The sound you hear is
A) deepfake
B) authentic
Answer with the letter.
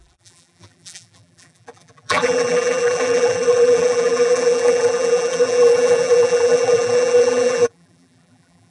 A